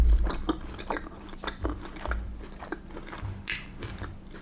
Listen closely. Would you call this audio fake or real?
real